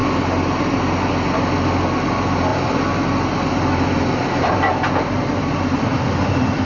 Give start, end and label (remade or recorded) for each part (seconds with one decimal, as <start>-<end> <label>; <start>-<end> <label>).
0.0-2.5 recorded; 2.5-6.6 remade